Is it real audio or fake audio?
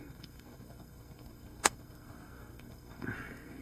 fake